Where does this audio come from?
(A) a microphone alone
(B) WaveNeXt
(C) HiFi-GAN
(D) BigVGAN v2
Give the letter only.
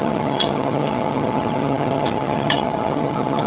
C